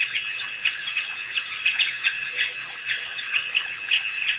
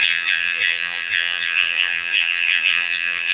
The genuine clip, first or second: first